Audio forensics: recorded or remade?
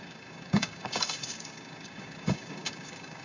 remade